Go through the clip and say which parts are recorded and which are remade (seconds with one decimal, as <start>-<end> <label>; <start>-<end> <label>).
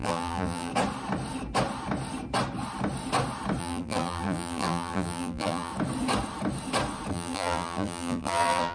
0.0-0.7 remade; 0.7-3.6 recorded; 3.6-5.7 remade; 5.7-7.1 recorded; 7.1-8.7 remade